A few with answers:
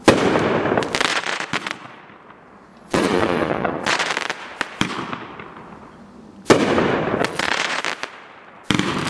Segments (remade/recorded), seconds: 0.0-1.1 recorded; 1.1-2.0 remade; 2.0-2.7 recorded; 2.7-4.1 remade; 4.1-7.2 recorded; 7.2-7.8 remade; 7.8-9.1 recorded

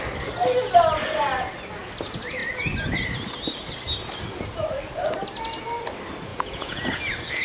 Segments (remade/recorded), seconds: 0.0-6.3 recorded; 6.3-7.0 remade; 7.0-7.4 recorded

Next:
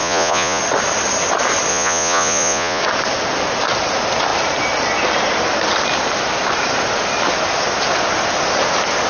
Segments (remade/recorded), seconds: 0.0-0.6 remade; 0.6-1.7 recorded; 1.7-2.8 remade; 2.8-9.1 recorded

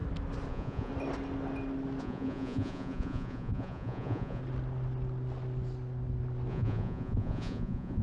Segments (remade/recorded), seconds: 0.0-0.5 recorded; 0.5-0.9 remade; 0.9-2.0 recorded; 2.0-4.4 remade; 4.4-6.5 recorded; 6.5-8.0 remade

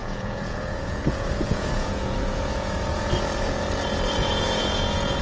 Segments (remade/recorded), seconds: 0.0-3.1 remade; 3.1-4.2 recorded; 4.2-5.2 remade